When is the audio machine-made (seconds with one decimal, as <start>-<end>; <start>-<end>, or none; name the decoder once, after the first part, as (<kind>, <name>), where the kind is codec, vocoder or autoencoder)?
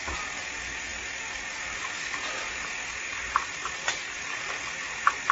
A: 3.9-4.4 (codec, DAC)